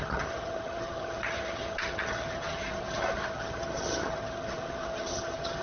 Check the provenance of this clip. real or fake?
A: fake